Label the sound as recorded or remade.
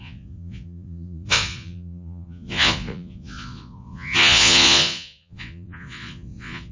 remade